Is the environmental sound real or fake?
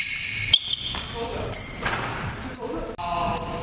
real